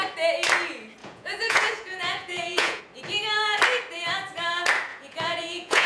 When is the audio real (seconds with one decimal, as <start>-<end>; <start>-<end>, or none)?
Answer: 0.0-1.0; 2.8-4.9